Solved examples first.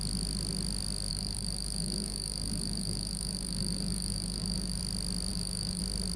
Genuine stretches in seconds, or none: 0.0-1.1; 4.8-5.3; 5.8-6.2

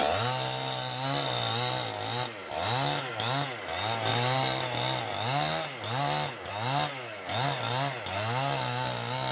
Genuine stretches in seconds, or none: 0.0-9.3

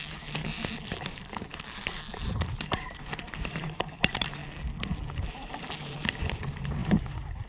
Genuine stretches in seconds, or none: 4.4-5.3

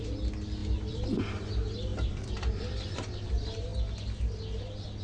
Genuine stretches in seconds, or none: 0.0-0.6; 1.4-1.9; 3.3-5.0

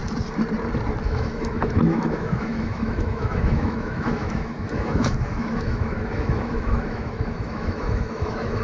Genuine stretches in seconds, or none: 0.0-1.0

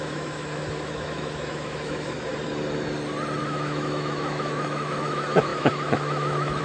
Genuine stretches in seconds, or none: 2.3-3.4